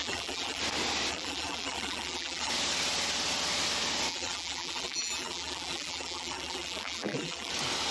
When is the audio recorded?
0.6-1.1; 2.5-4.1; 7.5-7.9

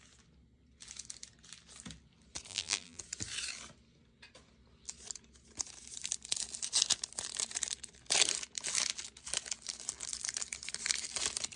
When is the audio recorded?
0.0-2.5; 3.0-11.6

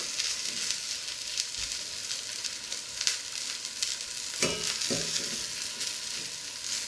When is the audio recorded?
0.0-6.9

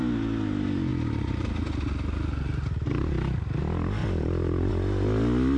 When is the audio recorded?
0.0-4.0; 4.7-5.6

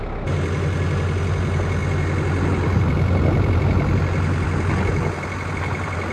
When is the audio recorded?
0.0-6.1

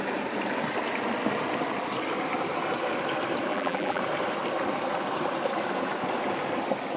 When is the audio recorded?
0.0-3.5; 4.0-7.0

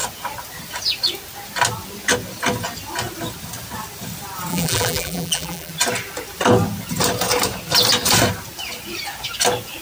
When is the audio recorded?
0.0-4.5; 5.7-9.8